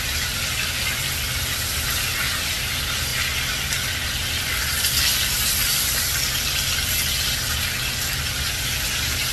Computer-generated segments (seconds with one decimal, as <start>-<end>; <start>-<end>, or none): none